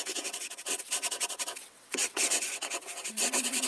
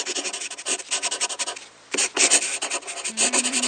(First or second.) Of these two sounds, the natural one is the second